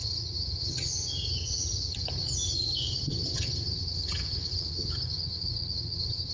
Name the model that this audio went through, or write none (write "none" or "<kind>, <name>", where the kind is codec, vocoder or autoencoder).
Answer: vocoder, HiFi-GAN